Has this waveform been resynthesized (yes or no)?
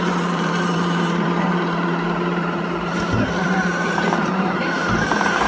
yes